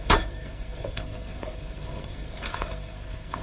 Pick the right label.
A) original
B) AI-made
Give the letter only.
B